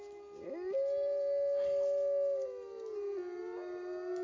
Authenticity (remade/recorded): recorded